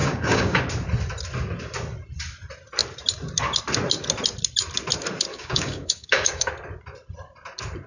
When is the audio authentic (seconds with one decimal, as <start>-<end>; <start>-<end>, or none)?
0.6-5.3; 6.5-7.9